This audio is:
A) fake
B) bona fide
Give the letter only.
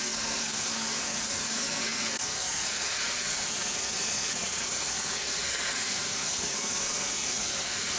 A